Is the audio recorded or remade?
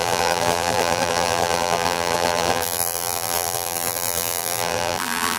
remade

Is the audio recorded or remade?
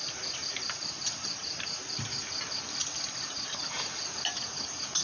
recorded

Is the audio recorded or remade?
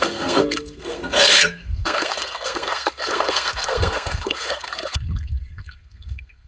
remade